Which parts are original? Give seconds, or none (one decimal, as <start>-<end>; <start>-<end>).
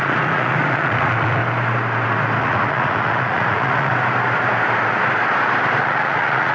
1.4-2.4; 3.9-5.8